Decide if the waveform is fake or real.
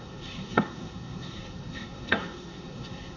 fake